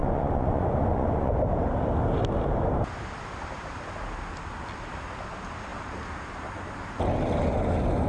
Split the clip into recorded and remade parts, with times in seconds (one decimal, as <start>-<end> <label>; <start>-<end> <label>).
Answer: 0.0-1.3 remade; 1.3-8.1 recorded